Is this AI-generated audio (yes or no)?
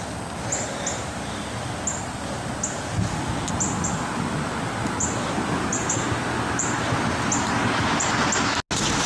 no